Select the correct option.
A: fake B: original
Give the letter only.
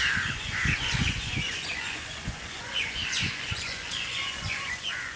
A